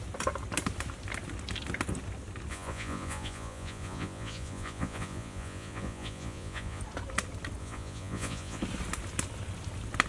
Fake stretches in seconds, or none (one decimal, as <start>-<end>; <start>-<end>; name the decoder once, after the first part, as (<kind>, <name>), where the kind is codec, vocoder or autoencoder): 2.5-6.8 (vocoder, Vocos); 7.6-8.6